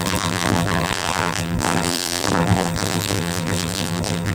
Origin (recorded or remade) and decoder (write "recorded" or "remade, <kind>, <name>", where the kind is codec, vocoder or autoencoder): remade, vocoder, BigVGAN v2